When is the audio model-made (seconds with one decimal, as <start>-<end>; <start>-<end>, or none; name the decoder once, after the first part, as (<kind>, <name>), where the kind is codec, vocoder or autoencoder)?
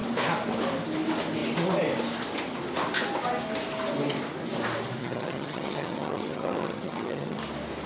5.0-7.4 (vocoder, HiFi-GAN)